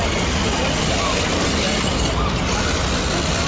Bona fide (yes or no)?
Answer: yes